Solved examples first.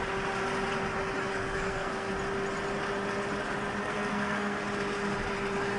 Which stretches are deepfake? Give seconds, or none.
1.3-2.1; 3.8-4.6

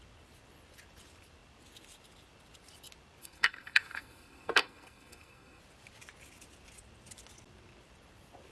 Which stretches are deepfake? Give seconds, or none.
3.2-5.6

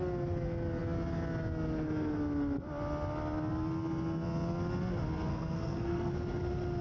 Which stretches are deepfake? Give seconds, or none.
5.3-6.1

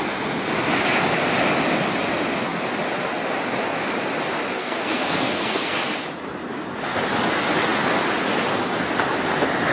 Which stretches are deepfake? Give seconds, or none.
4.6-5.9

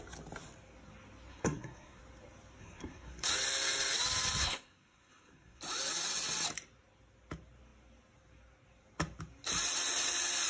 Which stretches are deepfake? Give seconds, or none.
1.3-2.0; 2.6-3.3; 4.4-5.6

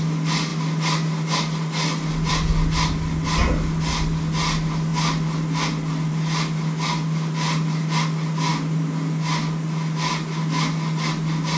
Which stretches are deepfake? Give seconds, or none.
none